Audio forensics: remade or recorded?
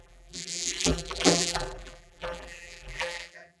remade